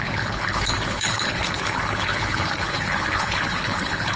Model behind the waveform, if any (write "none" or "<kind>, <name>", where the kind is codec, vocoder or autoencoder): codec, HILCodec